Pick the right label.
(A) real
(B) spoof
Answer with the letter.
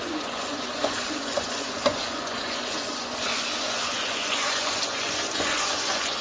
B